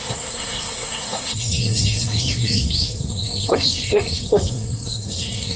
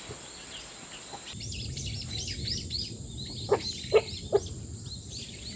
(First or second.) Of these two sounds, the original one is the second